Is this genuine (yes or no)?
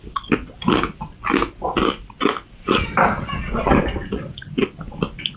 yes